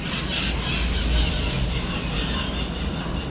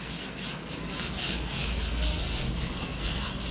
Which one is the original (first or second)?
first